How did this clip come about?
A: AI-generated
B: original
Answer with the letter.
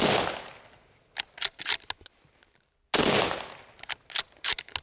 B